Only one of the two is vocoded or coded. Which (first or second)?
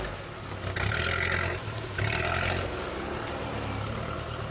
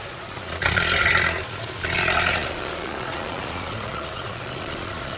second